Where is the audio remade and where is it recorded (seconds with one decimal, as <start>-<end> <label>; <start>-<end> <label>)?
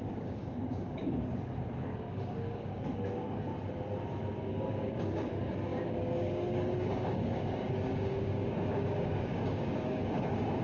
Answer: 0.0-3.5 remade; 3.5-4.5 recorded; 4.5-10.6 remade